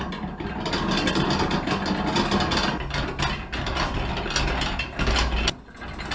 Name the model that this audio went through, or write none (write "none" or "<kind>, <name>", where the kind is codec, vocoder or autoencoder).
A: none